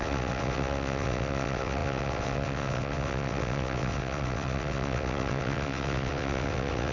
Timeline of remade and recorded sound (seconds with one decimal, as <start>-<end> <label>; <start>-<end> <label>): 0.0-6.9 remade